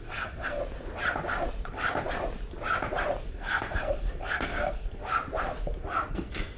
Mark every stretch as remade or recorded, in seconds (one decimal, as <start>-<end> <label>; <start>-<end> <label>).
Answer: 0.0-0.6 remade; 0.6-3.3 recorded; 3.3-5.0 remade; 5.0-6.1 recorded; 6.1-6.6 remade